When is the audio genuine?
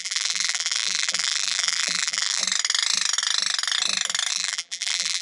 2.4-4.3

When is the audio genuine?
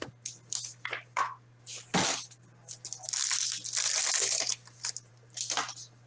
0.0-6.1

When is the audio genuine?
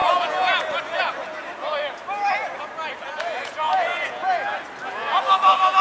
0.6-3.4; 4.5-5.8